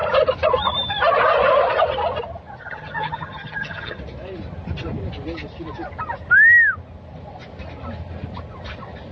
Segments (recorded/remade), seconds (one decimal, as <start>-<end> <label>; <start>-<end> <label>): 0.0-2.6 recorded; 2.6-4.0 remade; 4.0-9.1 recorded